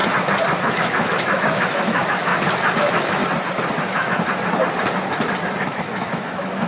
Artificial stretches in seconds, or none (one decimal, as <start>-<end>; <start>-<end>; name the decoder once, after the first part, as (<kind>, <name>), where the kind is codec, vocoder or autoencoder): 0.7-2.3 (autoencoder, DAC-VAE); 2.8-3.2; 5.6-6.7